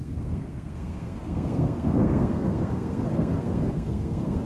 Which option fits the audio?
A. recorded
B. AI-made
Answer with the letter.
B